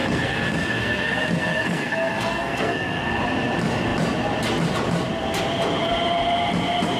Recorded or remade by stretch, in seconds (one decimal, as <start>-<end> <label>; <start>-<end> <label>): 0.0-3.2 remade; 3.2-7.0 recorded